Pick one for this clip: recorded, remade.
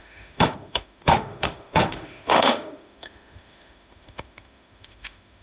remade